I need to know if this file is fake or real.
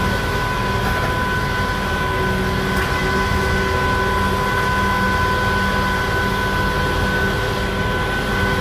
real